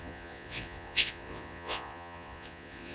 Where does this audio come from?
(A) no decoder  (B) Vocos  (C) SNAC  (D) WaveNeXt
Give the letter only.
B